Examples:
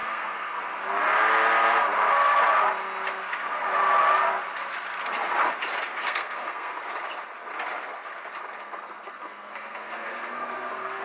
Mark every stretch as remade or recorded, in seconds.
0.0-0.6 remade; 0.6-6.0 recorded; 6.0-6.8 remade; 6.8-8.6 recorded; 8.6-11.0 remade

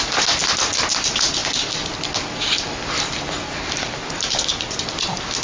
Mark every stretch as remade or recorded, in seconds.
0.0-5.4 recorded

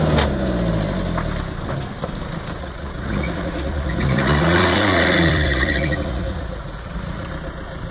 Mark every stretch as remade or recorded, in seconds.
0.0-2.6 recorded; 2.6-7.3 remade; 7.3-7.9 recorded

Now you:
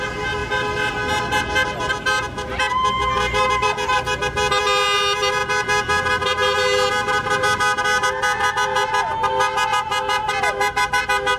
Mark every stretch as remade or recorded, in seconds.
0.0-3.0 recorded; 3.0-4.6 remade; 4.6-11.4 recorded